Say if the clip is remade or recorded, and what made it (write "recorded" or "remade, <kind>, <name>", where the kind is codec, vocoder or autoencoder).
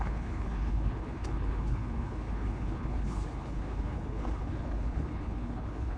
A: remade, codec, HILCodec